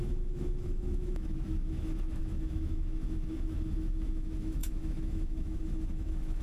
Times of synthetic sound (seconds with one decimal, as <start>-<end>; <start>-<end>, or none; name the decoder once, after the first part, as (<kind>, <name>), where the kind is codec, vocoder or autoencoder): 0.0-6.4 (autoencoder, DAC-VAE)